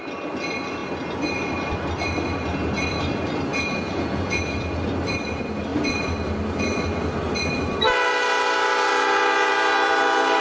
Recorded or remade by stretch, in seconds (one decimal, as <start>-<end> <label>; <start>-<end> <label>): 0.0-3.5 recorded; 3.5-4.8 remade; 4.8-10.4 recorded